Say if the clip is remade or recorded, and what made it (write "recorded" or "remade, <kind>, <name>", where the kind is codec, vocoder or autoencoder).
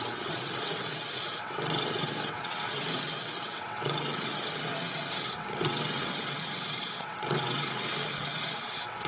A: remade, vocoder, WaveNeXt